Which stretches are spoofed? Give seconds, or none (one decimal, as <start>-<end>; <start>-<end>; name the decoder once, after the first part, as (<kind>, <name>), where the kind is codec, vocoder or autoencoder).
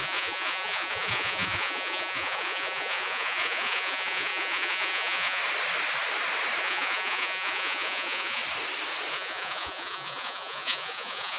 0.0-5.4 (vocoder, Vocos); 6.6-8.4; 9.1-11.4